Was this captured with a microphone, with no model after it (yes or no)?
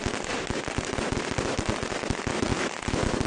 yes